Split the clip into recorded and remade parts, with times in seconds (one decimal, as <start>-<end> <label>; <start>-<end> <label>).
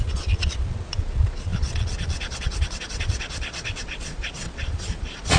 0.0-5.4 remade